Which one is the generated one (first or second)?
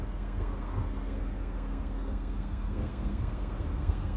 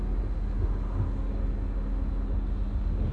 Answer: first